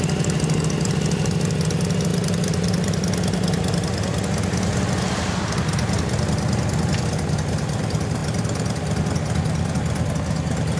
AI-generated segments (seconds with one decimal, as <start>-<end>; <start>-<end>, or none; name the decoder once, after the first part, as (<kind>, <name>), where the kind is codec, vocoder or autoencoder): none